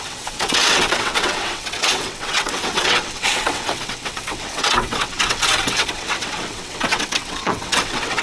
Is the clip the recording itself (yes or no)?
no